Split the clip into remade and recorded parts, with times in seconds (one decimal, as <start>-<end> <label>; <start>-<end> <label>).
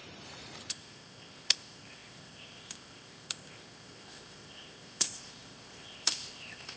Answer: 0.0-0.7 recorded; 0.7-6.8 remade